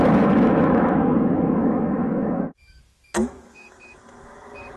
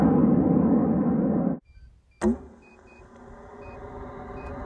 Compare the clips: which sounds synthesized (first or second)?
first